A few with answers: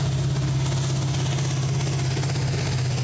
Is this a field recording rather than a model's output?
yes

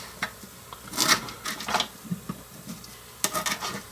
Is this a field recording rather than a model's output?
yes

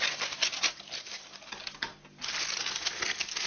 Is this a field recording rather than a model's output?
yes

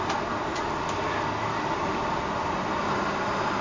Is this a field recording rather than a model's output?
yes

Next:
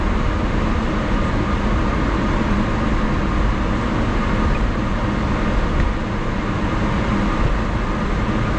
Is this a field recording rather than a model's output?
yes